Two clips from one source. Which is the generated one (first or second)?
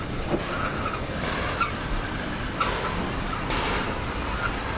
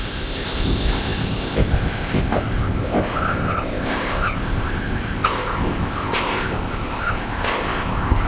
second